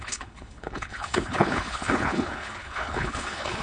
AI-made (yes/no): yes